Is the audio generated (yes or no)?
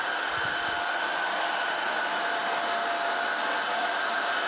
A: no